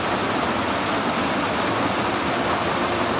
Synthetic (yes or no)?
no